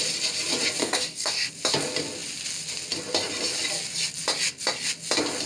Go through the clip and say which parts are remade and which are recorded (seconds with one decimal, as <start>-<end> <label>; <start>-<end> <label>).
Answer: 0.0-0.8 recorded; 0.8-1.5 remade; 1.5-5.5 recorded